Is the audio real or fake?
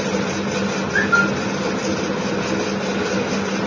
real